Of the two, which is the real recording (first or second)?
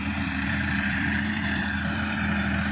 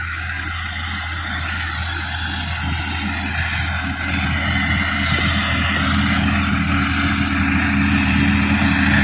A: second